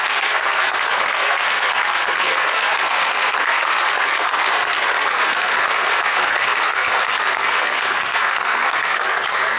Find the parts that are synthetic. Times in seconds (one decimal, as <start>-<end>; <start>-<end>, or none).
0.0-9.6